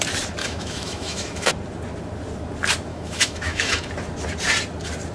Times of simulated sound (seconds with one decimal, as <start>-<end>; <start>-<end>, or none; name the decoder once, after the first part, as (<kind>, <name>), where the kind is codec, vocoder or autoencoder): 0.4-1.5 (autoencoder, DAC-VAE); 2.9-3.9